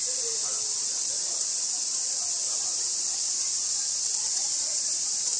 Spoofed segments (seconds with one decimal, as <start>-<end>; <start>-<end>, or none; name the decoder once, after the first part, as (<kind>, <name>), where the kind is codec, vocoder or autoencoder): none